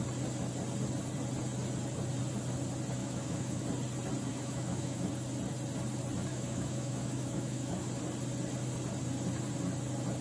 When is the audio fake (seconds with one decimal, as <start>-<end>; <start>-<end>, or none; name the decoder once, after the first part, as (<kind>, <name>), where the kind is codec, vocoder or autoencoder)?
3.0-3.6 (autoencoder, DAC-VAE); 4.3-5.1; 6.3-7.9